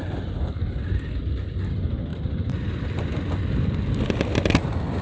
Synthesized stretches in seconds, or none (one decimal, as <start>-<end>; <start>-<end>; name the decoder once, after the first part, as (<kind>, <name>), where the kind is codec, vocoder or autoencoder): 2.1-2.8 (vocoder, BigVGAN v2)